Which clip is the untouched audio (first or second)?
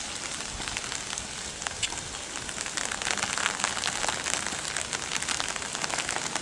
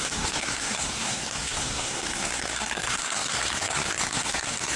first